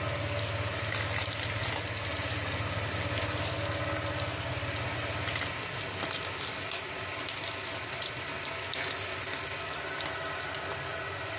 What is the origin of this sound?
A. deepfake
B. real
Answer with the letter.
B